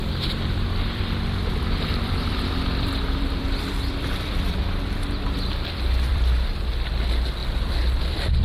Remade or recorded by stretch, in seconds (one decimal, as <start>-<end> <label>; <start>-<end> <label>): 0.0-4.8 remade; 4.8-6.1 recorded; 6.1-6.9 remade; 6.9-7.4 recorded; 7.4-8.4 remade